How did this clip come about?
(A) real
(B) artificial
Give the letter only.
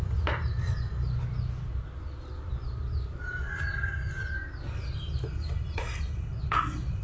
A